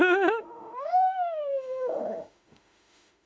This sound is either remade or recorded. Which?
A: remade